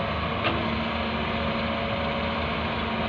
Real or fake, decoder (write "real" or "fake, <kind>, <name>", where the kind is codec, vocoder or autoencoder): real